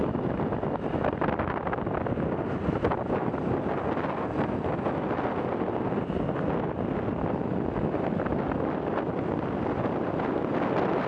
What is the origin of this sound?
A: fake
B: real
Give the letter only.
B